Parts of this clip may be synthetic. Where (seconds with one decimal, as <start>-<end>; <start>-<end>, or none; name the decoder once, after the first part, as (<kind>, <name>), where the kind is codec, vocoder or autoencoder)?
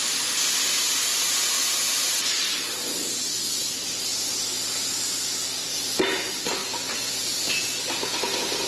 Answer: none